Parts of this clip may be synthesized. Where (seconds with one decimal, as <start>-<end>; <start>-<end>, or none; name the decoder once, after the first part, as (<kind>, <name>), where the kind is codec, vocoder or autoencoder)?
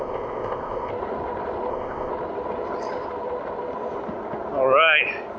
0.0-0.9 (codec, ZipCodec); 1.7-2.1